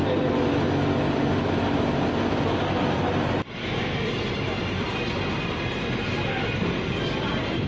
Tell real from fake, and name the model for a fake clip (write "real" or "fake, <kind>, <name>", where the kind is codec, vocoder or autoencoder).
real